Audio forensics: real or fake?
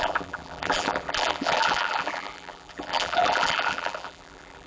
fake